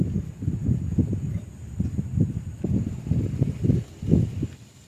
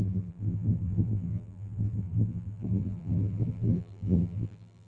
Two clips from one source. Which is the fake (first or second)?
second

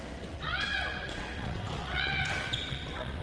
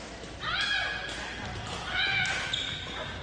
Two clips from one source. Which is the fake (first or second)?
first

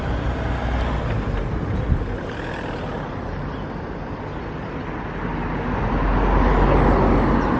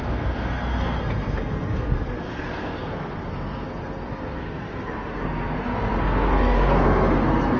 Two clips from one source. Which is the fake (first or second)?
second